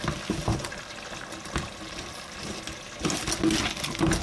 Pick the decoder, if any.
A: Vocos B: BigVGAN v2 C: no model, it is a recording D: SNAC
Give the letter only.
C